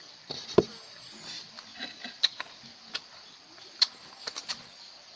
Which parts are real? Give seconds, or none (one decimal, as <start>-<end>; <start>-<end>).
0.0-5.2